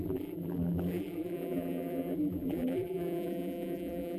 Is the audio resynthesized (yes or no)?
yes